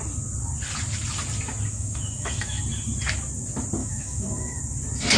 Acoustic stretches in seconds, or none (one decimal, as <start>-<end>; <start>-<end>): 0.0-1.7; 2.6-3.8; 4.6-5.2